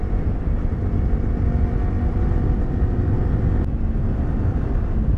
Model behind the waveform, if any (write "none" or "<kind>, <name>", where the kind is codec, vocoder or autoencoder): none